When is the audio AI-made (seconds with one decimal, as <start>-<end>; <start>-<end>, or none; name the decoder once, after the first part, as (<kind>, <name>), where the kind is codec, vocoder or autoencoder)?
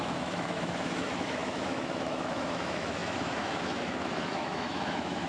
0.0-5.3 (autoencoder, DAC-VAE)